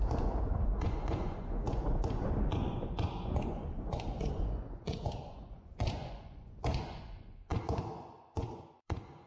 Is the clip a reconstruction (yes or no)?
yes